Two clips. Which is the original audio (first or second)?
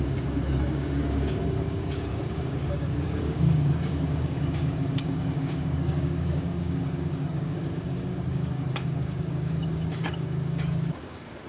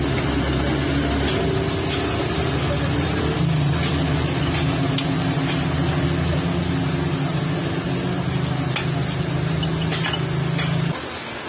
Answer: second